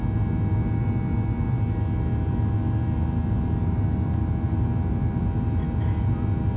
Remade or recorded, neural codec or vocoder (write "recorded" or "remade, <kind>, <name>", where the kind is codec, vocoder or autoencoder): recorded